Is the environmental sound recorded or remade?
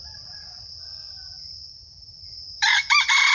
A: remade